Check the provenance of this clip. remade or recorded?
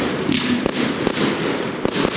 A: recorded